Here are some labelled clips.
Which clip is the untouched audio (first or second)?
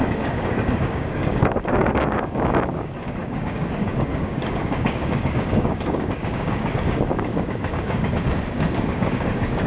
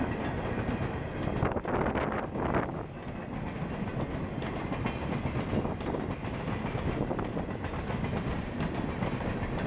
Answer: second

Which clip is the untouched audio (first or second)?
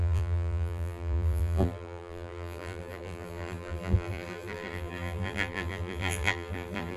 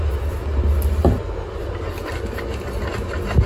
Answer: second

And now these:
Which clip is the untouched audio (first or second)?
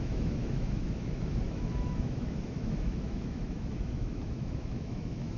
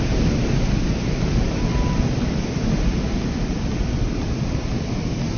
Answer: second